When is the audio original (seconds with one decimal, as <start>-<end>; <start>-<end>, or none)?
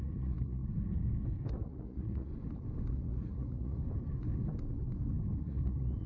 0.6-1.6; 2.3-2.9; 3.8-5.4